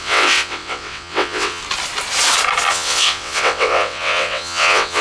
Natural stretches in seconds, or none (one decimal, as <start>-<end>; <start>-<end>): 1.6-2.7